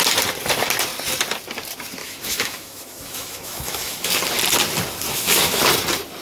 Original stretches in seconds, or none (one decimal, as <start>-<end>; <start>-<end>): 0.0-2.0; 4.1-5.1; 5.6-6.2